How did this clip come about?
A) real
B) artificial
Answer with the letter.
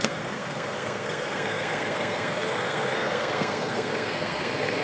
B